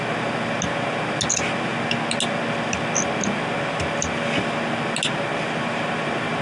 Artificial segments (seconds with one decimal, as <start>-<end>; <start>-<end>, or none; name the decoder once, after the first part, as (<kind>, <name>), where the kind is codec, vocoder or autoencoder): none